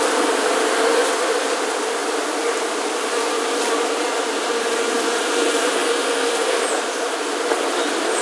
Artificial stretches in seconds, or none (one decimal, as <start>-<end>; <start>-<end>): 0.0-1.0; 1.5-5.8; 7.7-8.2